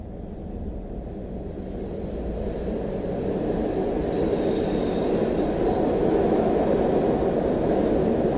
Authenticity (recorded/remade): recorded